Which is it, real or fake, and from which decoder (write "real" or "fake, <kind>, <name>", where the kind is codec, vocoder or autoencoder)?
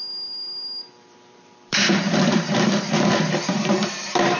fake, vocoder, BigVGAN v2